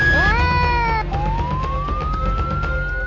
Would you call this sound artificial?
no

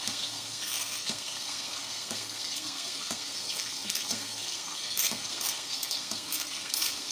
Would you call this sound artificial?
yes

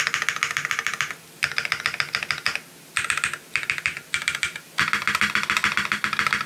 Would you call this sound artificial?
yes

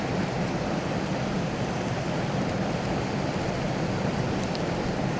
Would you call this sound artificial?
no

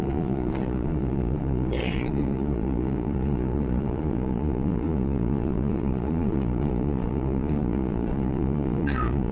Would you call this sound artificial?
yes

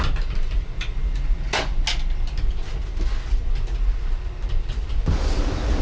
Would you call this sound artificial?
no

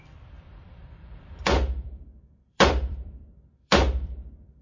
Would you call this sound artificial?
yes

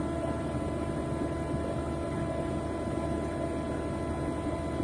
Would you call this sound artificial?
no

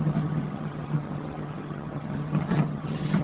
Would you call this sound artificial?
yes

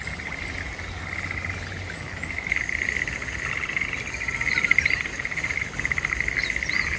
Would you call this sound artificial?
no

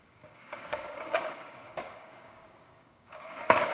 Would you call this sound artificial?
yes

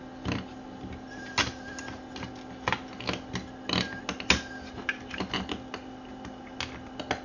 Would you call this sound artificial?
no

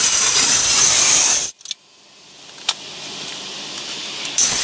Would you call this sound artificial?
no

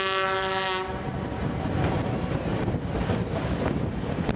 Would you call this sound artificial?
no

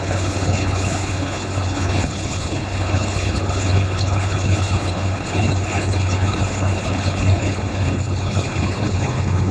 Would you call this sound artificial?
yes